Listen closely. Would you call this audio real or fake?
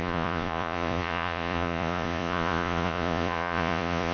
fake